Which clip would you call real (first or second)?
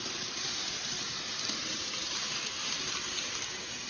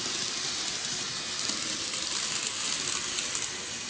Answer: second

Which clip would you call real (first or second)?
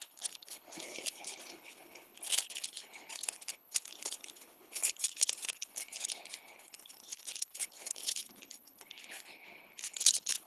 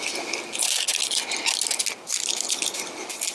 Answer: second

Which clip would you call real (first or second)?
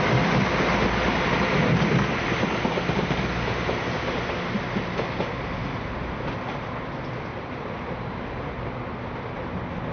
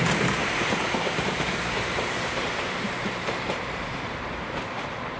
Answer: first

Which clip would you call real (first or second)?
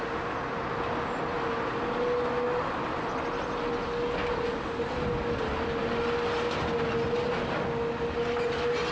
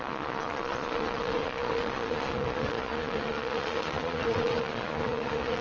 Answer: first